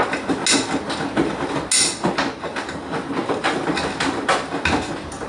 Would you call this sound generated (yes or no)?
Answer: no